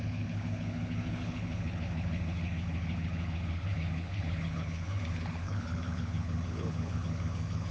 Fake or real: fake